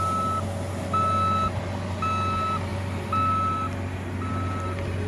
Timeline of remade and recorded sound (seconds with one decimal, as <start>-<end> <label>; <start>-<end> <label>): 0.0-5.1 recorded